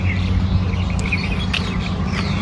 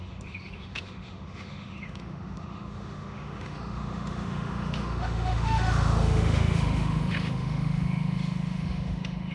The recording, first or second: first